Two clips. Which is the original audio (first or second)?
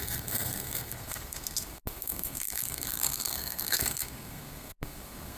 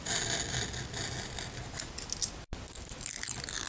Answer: second